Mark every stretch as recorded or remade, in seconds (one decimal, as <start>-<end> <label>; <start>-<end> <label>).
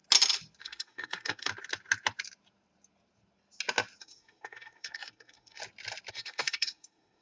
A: 0.0-0.6 recorded; 0.6-1.5 remade; 1.5-4.0 recorded; 4.0-5.6 remade; 5.6-6.1 recorded; 6.1-7.2 remade